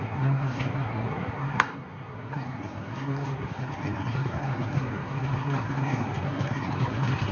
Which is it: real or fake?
fake